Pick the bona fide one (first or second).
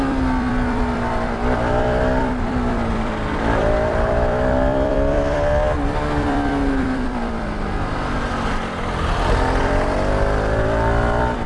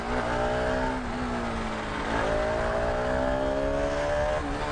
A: second